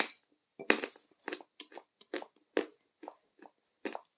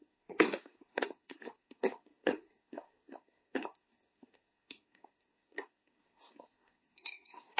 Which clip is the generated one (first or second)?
second